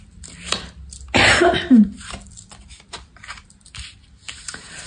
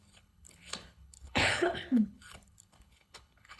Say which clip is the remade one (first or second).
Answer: second